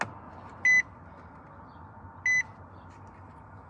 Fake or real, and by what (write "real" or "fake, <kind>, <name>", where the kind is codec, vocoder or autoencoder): real